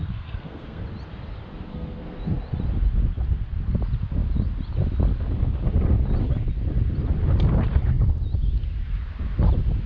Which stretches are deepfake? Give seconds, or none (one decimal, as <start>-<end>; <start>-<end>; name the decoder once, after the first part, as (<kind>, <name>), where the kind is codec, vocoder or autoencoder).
0.0-0.8 (codec, SNAC); 1.7-2.2